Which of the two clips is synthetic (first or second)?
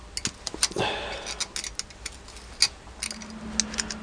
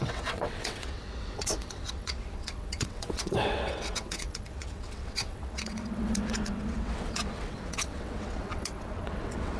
second